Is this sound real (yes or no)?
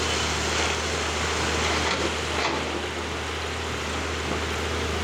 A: yes